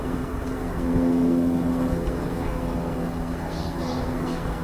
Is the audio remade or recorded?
remade